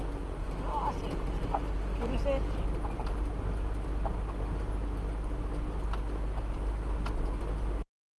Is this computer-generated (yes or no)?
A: no